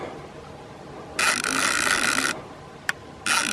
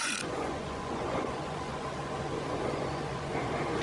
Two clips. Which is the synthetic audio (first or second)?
second